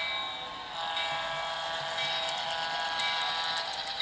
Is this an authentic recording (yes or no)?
yes